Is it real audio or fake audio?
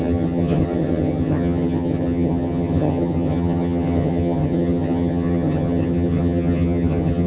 fake